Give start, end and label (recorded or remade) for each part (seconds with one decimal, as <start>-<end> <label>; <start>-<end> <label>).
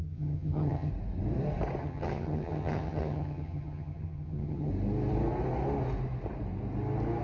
0.0-0.9 remade; 0.9-1.8 recorded; 1.8-4.7 remade; 4.7-7.2 recorded